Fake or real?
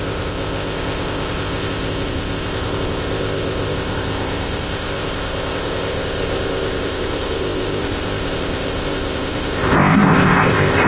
fake